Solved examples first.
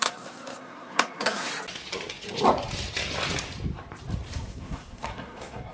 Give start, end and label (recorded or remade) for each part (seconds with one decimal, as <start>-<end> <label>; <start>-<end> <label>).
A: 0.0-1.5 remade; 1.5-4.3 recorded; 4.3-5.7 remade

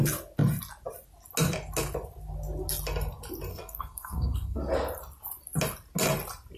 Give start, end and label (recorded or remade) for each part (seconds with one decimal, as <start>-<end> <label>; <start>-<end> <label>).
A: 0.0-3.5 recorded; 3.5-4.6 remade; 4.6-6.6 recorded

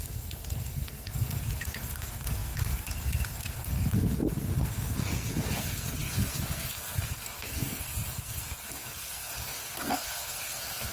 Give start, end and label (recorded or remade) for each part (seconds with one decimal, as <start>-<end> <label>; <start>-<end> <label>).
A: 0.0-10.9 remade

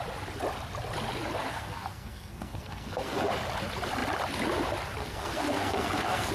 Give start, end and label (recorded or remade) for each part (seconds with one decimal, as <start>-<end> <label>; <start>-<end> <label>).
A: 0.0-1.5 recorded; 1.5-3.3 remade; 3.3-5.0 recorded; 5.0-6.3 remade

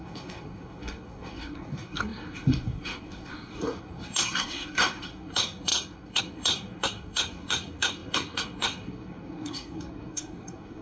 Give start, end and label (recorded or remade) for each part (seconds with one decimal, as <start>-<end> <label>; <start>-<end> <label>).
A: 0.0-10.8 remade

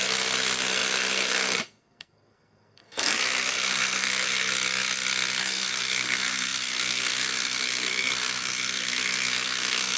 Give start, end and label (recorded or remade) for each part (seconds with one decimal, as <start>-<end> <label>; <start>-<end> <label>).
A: 0.0-4.5 remade; 4.5-5.4 recorded; 5.4-10.0 remade

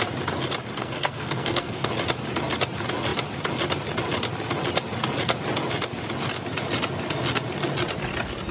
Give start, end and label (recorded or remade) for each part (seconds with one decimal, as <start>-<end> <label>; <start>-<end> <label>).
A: 0.0-0.8 recorded; 0.8-1.9 remade; 1.9-8.5 recorded

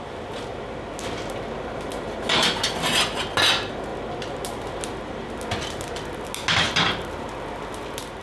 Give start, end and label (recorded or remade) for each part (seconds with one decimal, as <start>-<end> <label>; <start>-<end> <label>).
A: 0.0-8.2 recorded